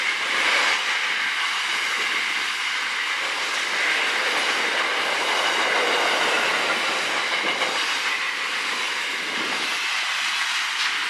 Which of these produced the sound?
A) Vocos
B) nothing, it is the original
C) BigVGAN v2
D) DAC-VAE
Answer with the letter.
B